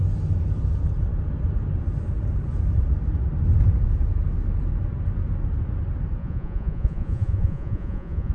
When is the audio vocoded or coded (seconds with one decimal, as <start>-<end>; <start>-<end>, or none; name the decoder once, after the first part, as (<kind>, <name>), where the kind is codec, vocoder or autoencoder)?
6.2-8.3 (vocoder, Vocos)